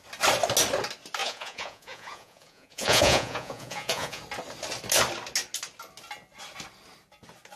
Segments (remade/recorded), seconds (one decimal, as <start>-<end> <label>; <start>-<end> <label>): 0.0-1.2 recorded; 1.2-4.2 remade; 4.2-7.6 recorded